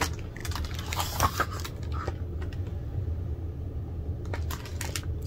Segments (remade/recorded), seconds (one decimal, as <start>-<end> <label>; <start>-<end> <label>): 0.0-5.3 recorded